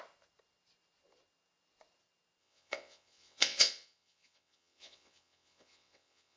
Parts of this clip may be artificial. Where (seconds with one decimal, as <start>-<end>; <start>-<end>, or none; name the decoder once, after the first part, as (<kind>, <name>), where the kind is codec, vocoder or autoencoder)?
2.4-6.4 (vocoder, WaveNeXt)